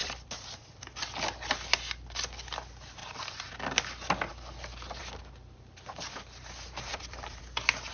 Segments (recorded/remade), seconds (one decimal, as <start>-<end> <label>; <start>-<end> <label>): 0.0-1.1 remade; 1.1-3.0 recorded; 3.0-3.5 remade; 3.5-6.9 recorded; 6.9-7.4 remade; 7.4-7.9 recorded